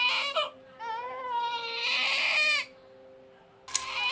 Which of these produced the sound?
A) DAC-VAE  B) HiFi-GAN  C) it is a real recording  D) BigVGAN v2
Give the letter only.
C